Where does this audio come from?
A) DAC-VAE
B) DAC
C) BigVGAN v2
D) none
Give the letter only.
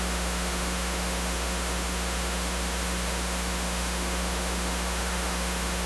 A